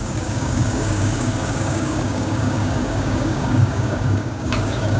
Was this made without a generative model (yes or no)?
no